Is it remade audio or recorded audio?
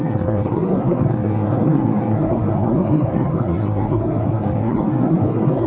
remade